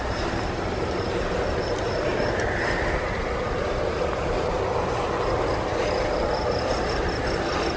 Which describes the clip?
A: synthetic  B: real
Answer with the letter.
B